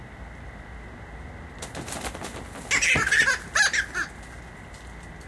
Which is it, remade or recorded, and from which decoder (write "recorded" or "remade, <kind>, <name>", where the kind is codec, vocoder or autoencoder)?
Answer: recorded